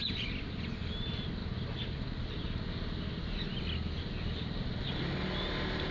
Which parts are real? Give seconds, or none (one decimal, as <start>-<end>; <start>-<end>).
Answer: 0.0-5.9